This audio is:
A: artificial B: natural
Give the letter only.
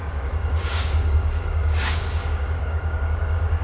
A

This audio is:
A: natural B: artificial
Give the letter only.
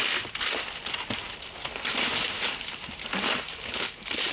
A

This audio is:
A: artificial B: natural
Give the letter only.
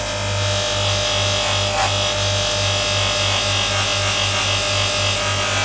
B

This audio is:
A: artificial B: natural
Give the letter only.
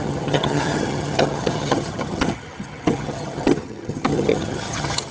A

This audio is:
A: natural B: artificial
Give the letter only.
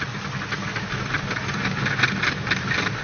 A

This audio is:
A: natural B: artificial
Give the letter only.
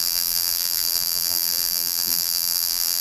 B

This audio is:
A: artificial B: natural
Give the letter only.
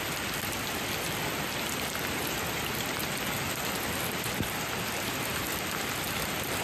B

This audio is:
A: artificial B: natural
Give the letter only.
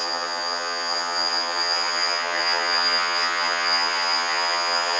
A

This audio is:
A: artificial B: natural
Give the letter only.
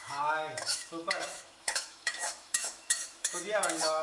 A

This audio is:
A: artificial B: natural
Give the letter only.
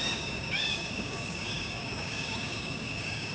A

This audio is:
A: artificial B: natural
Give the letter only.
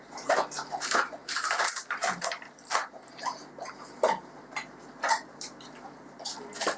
A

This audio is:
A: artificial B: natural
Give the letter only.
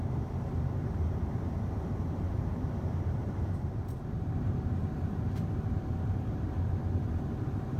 A